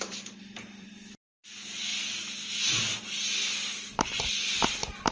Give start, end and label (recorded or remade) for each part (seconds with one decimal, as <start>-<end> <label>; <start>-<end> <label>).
0.0-1.9 remade; 1.9-5.1 recorded